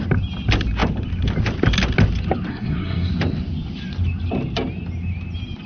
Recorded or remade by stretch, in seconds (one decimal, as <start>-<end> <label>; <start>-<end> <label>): 0.0-2.5 recorded; 2.5-3.1 remade; 3.1-5.7 recorded